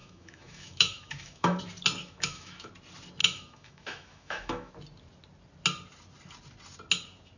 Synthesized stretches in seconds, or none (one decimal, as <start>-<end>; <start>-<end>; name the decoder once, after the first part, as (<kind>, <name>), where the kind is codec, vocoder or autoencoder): 0.0-1.6 (autoencoder, DAC-VAE); 2.0-2.7; 3.2-4.7